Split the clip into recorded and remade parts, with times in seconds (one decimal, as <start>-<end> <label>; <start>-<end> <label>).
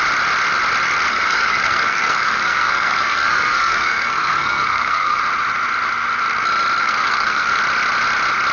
0.0-1.1 recorded; 1.1-5.2 remade; 5.2-6.8 recorded; 6.8-7.6 remade; 7.6-8.5 recorded